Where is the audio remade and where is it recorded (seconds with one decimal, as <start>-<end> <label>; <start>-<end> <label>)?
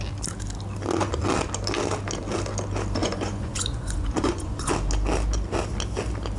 0.0-3.0 recorded; 3.0-4.7 remade; 4.7-6.4 recorded